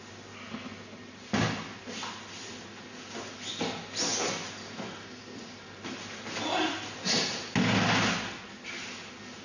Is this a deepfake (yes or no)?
no